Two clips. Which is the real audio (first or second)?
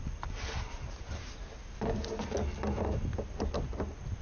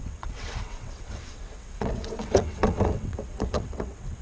first